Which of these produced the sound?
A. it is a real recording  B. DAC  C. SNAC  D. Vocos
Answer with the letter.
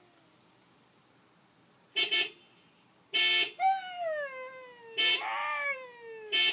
A